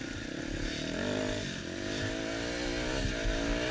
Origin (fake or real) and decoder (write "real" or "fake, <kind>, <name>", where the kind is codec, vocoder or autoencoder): real